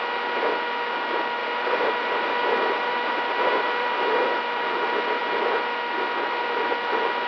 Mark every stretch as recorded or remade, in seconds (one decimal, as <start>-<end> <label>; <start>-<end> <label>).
0.0-1.4 recorded; 1.4-4.2 remade; 4.2-7.3 recorded